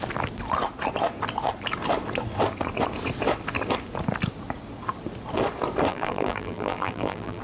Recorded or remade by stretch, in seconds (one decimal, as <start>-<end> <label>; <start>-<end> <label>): 0.0-5.9 recorded; 5.9-7.4 remade